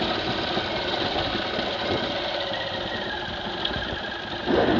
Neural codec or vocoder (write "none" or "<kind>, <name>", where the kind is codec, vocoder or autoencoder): none